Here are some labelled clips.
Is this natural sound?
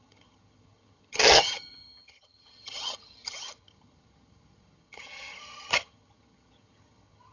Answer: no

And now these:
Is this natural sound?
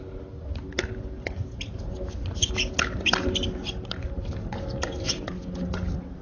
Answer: yes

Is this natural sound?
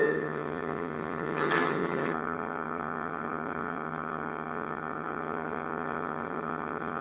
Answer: no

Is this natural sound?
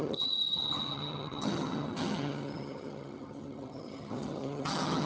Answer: no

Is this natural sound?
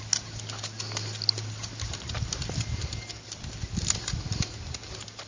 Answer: yes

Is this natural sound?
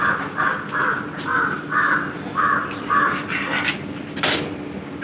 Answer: yes